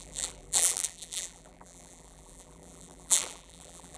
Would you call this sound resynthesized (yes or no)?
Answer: yes